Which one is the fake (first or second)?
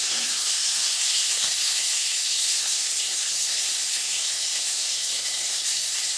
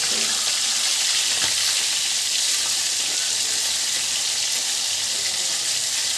first